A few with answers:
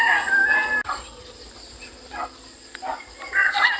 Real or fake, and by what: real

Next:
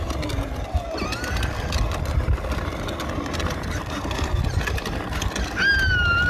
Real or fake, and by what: real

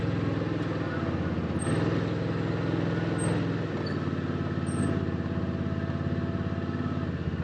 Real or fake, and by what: real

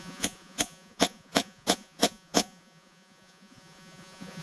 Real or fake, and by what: fake, vocoder, Vocos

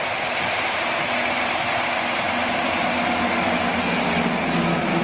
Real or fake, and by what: real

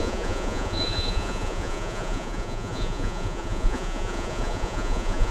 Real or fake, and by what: fake, vocoder, Vocos